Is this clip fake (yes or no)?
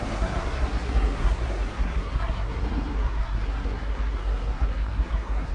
yes